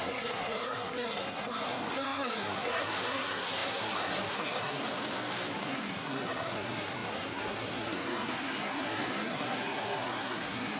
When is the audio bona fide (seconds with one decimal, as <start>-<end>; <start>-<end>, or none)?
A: 4.8-5.6